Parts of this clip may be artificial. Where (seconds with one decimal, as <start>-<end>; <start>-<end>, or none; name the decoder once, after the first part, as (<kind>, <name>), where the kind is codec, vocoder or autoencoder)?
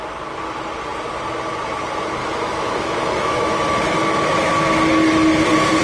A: 2.2-4.5 (autoencoder, DAC-VAE)